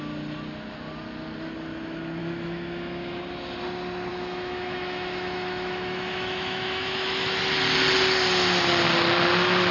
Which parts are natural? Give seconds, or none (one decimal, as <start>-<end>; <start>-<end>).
0.0-2.2; 3.2-4.1; 7.4-9.7